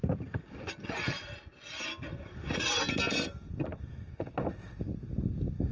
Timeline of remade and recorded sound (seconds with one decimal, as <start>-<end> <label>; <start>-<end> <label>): 0.0-5.7 recorded